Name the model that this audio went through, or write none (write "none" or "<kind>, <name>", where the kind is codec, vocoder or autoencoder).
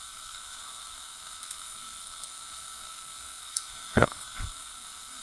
codec, SNAC